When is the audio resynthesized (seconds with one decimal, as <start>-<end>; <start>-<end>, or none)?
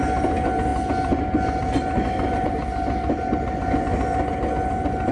none